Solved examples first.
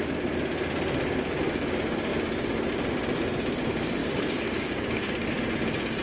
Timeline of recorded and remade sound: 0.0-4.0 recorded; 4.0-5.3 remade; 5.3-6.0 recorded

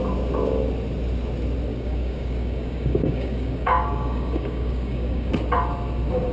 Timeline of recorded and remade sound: 0.0-1.7 recorded; 1.7-5.3 remade; 5.3-6.3 recorded